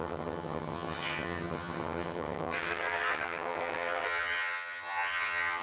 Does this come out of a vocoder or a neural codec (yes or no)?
yes